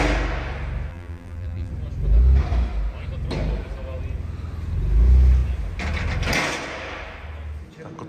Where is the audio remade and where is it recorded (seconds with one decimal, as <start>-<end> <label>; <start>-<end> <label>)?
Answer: 0.0-0.9 recorded; 0.9-1.7 remade; 1.7-8.1 recorded